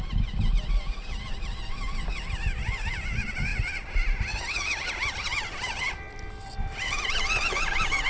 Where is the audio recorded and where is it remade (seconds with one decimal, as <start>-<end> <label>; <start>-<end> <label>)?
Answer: 0.0-8.1 recorded